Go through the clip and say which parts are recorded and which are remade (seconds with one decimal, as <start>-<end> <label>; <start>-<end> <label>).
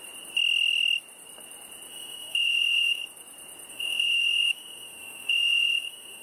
0.0-1.9 recorded; 1.9-3.0 remade; 3.0-3.7 recorded; 3.7-6.2 remade